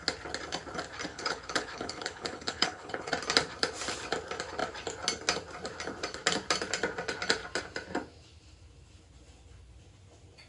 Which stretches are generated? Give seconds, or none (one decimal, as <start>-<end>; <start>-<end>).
1.1-3.1